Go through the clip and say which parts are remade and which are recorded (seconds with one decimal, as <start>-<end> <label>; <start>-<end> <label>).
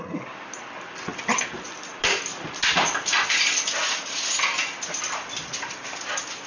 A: 0.0-6.5 recorded